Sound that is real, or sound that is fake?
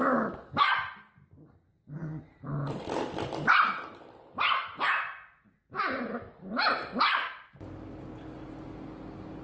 real